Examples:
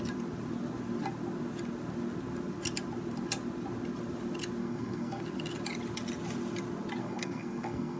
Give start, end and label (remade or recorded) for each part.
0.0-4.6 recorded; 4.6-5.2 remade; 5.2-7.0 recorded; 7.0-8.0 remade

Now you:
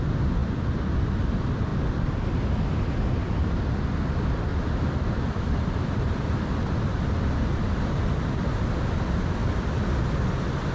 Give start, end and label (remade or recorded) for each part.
0.0-4.5 recorded; 4.5-8.0 remade; 8.0-10.7 recorded

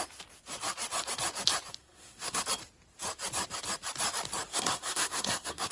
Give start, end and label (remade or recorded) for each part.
0.0-1.8 recorded; 1.8-2.4 remade; 2.4-4.5 recorded; 4.5-5.7 remade